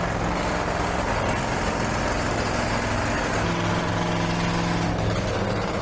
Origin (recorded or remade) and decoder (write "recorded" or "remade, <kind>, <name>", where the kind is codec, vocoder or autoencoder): recorded